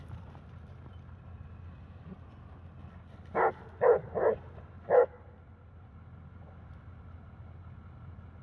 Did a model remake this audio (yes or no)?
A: no